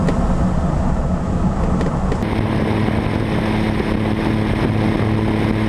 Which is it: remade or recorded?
recorded